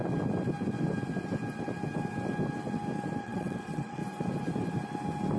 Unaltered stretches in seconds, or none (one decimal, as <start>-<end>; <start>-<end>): 0.0-3.2; 4.0-5.4